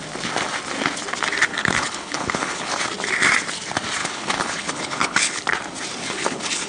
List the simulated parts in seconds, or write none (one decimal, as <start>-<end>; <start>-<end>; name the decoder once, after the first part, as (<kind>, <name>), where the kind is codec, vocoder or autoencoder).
1.5-2.7 (codec, HILCodec); 4.0-5.4; 6.0-6.7